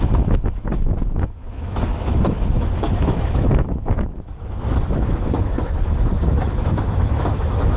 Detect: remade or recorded remade